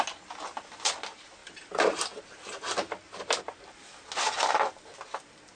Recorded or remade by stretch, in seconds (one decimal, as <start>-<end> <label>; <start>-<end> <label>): 0.0-5.6 recorded